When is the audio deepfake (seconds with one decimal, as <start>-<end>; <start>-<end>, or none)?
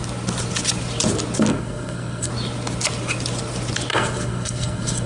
1.5-2.3; 3.9-5.1